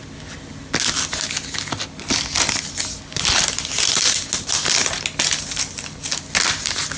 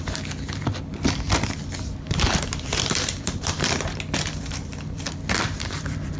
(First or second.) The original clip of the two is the first